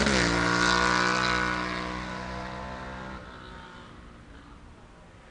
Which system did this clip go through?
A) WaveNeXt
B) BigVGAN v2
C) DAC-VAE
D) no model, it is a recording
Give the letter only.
D